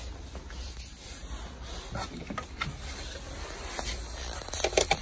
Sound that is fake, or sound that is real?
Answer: real